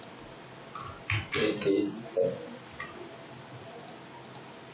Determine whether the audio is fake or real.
real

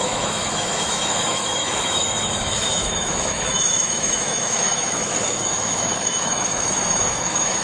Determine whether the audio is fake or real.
fake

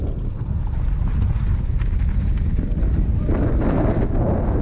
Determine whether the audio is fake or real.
real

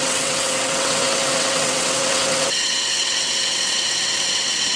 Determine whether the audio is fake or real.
fake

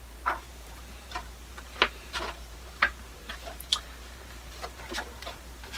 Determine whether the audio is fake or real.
fake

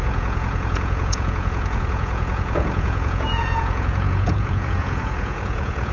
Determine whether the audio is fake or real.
fake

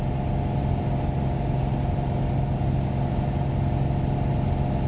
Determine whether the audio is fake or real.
real